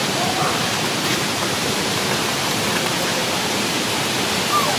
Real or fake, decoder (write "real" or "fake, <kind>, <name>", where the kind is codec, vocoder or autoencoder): fake, vocoder, BigVGAN v2